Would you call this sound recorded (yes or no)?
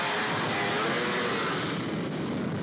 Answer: yes